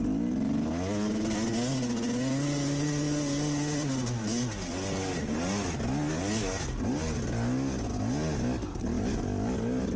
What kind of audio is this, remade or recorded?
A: recorded